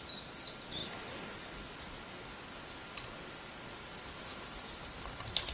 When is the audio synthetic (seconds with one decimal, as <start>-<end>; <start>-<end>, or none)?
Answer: none